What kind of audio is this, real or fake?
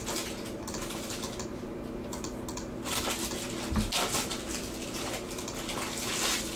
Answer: real